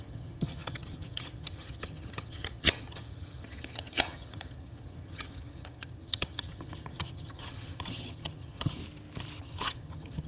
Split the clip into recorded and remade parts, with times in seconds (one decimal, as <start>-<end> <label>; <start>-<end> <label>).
0.0-8.8 remade; 8.8-9.4 recorded; 9.4-10.3 remade